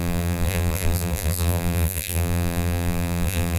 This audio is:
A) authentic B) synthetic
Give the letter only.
B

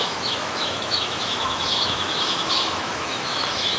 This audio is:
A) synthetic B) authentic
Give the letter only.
A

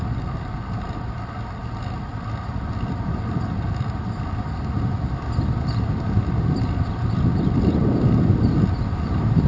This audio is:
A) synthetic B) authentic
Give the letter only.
B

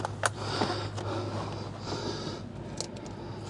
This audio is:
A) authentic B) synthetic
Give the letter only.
A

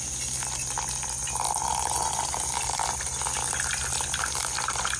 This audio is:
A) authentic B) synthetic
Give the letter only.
A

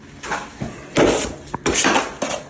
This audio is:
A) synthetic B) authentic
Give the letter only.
B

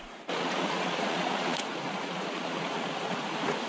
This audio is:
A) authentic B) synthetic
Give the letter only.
B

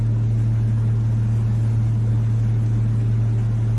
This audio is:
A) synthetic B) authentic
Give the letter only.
B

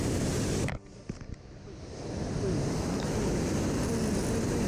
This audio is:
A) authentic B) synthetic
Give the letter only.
A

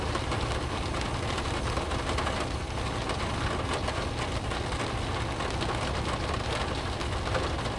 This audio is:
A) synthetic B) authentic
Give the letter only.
B